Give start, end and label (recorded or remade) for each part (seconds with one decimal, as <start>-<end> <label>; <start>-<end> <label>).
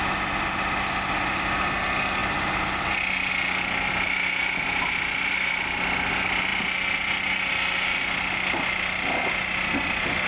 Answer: 0.0-10.3 recorded